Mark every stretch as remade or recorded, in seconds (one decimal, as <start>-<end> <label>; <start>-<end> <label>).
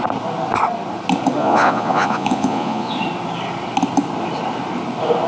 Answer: 0.0-1.4 recorded; 1.4-2.9 remade; 2.9-5.3 recorded